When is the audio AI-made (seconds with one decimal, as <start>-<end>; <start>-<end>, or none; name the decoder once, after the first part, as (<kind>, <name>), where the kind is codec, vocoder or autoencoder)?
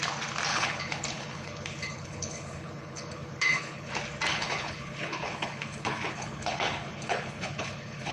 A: 0.5-3.9 (codec, HILCodec); 4.3-8.1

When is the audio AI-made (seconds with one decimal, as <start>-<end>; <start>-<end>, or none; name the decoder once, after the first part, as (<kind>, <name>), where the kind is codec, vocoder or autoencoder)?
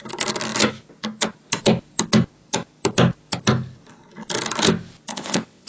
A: 5.1-5.7 (vocoder, WaveNeXt)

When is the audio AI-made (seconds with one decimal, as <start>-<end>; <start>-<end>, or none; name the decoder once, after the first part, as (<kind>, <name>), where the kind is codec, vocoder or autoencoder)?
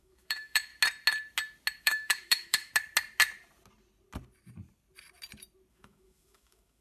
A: 0.0-0.7 (autoencoder, DAC-VAE); 1.8-2.7; 5.7-6.8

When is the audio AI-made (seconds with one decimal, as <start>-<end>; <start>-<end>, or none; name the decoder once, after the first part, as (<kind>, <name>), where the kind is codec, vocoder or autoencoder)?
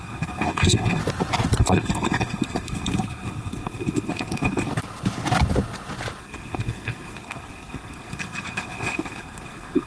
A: 0.0-1.0 (codec, SNAC); 1.6-4.7; 6.2-9.9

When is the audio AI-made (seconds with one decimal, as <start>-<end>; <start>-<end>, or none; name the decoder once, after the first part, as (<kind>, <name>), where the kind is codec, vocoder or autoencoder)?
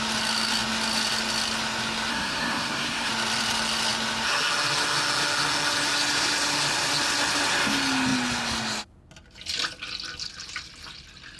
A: 2.1-3.1 (codec, SNAC)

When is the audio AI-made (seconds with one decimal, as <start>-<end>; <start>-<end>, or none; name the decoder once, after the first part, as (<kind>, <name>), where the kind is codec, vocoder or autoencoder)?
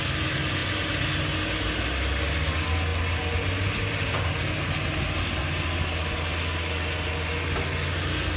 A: none